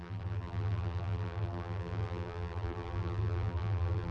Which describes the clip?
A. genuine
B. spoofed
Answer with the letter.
B